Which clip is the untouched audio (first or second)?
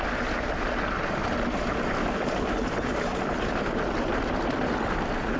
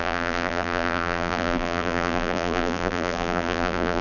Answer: first